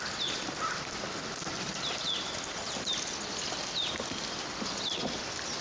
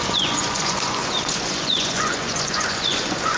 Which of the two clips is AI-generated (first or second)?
second